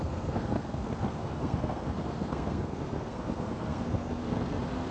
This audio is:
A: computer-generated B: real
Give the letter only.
A